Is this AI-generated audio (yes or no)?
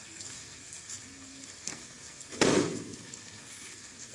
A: yes